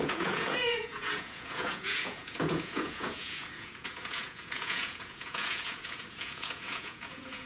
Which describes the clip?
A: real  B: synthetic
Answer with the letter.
B